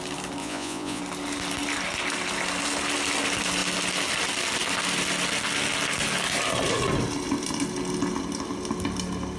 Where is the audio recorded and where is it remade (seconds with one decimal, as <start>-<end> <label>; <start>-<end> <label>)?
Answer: 0.0-0.4 recorded; 0.4-1.0 remade; 1.0-9.4 recorded